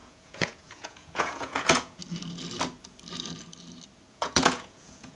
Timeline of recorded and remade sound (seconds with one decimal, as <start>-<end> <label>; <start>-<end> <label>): 0.0-2.0 remade; 2.0-4.1 recorded; 4.1-5.2 remade